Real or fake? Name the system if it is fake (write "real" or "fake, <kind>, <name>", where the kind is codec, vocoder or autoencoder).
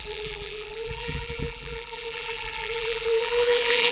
fake, vocoder, BigVGAN v2